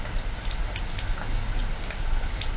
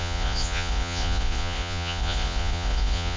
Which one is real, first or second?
first